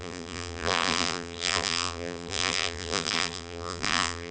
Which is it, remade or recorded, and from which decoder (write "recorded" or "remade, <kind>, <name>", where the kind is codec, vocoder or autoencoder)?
remade, vocoder, BigVGAN v2